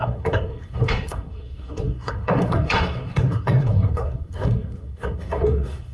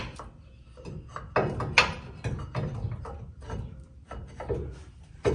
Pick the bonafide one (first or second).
second